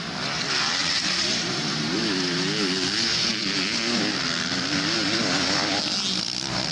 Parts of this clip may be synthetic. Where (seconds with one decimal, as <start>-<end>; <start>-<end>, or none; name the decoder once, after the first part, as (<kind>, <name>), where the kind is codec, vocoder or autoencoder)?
0.8-2.0 (vocoder, BigVGAN v2)